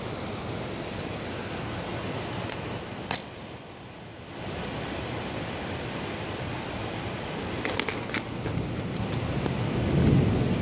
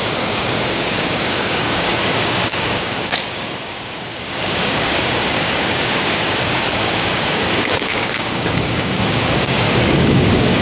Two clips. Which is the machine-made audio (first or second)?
second